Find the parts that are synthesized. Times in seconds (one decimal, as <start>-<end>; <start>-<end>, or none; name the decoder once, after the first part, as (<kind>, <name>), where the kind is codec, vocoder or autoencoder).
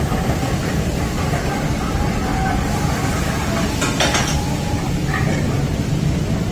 0.0-0.9 (vocoder, BigVGAN v2); 1.8-6.5